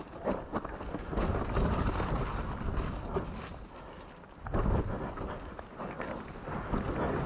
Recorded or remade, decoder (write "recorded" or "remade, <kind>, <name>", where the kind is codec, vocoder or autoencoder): recorded